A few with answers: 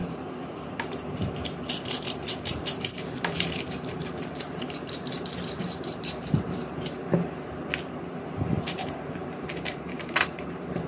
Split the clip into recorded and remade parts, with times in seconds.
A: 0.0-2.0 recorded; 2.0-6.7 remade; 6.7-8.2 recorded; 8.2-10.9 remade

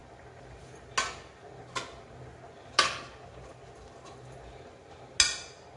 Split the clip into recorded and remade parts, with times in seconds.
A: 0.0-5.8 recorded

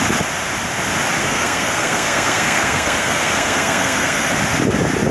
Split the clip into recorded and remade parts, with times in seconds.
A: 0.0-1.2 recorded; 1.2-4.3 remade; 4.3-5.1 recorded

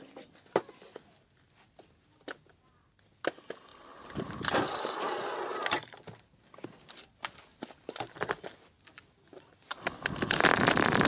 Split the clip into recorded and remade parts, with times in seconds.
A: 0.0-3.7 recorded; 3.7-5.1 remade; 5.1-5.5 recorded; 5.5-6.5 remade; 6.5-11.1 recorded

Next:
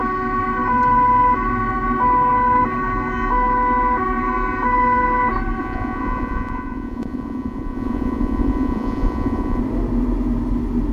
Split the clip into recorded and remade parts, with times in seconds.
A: 0.0-5.6 recorded; 5.6-9.6 remade; 9.6-10.9 recorded

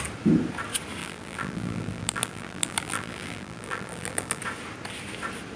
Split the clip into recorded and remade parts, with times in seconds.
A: 0.0-1.0 recorded; 1.0-4.4 remade; 4.4-5.6 recorded

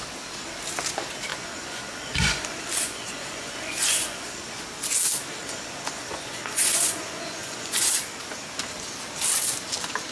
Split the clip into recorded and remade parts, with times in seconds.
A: 0.0-1.3 recorded; 1.3-4.6 remade; 4.6-5.4 recorded; 5.4-7.9 remade; 7.9-10.1 recorded

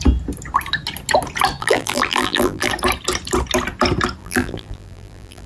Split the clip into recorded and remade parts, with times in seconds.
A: 0.0-1.6 recorded; 1.6-2.7 remade; 2.7-4.2 recorded; 4.2-5.5 remade